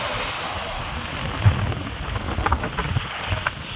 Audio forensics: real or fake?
real